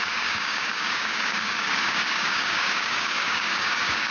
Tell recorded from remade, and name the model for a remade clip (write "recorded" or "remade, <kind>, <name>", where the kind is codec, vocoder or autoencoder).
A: remade, codec, DAC